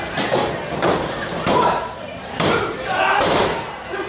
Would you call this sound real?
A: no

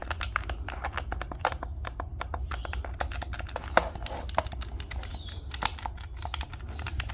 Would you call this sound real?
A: yes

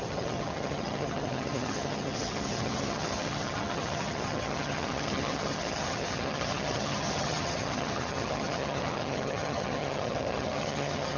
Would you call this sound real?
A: no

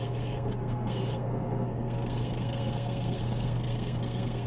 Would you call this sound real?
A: no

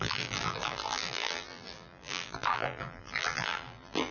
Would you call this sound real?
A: no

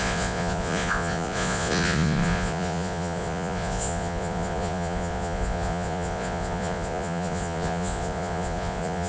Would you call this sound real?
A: no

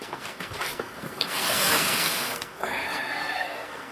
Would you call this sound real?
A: no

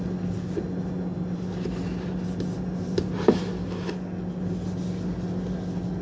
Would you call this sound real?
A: yes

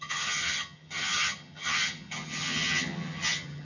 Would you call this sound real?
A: no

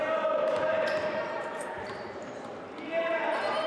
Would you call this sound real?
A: no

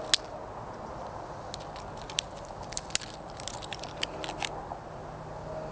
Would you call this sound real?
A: yes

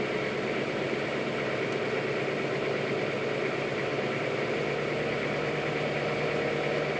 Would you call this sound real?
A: yes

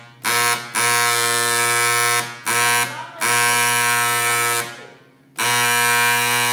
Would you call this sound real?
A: yes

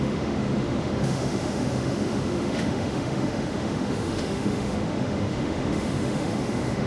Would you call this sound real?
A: no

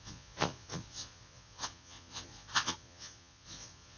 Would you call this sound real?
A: no